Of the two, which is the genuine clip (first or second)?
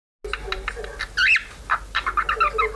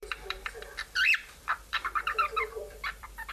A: first